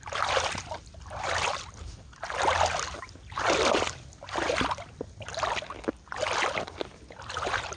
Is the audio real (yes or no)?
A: yes